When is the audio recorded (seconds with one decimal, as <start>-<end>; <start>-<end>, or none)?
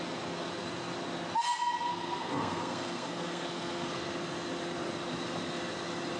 0.0-1.9; 3.9-6.2